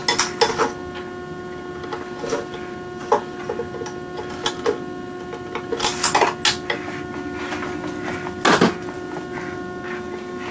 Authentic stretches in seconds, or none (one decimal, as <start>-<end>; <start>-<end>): 0.0-10.5